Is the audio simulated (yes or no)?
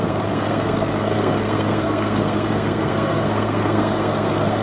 yes